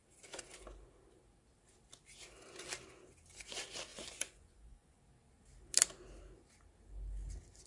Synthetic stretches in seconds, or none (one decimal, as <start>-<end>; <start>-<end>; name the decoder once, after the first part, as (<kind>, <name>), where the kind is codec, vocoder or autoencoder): 3.9-5.0 (vocoder, Vocos)